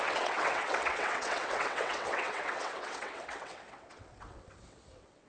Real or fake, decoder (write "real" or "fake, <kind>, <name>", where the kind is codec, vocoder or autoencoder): fake, vocoder, WaveNeXt